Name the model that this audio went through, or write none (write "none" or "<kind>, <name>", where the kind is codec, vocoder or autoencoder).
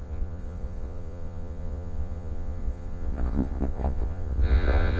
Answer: vocoder, Vocos